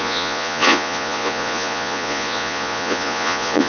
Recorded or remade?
remade